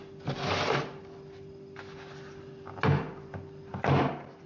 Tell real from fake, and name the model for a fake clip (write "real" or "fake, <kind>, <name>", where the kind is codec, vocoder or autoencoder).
real